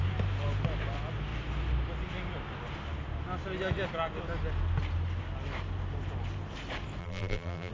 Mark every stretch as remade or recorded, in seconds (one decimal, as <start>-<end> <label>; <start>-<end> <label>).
0.0-7.0 recorded; 7.0-7.7 remade